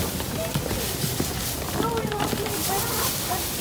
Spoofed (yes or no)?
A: no